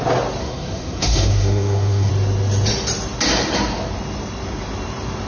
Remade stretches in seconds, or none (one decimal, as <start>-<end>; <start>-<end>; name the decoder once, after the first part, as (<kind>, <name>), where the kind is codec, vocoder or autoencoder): 0.4-2.1 (codec, SNAC)